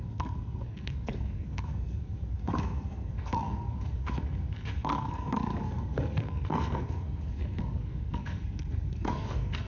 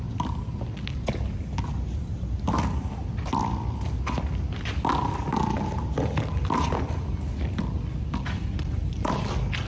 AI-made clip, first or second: first